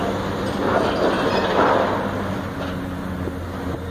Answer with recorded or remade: recorded